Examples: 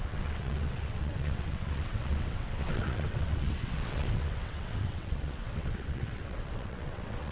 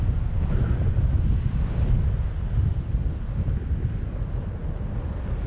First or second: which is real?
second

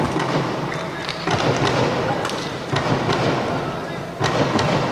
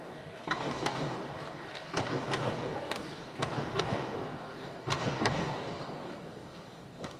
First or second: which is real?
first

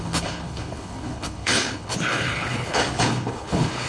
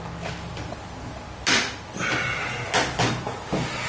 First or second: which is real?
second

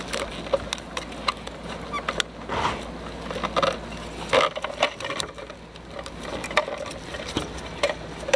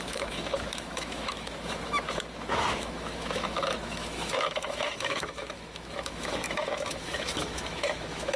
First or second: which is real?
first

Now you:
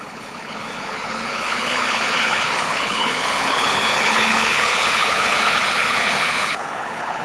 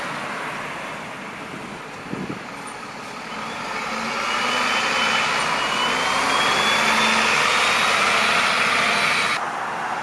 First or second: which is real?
second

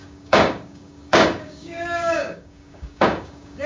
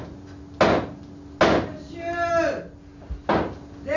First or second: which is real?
second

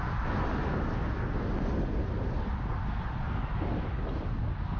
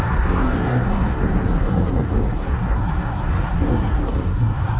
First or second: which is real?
first